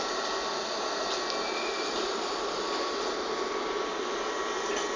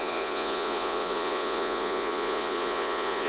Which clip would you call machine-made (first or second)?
second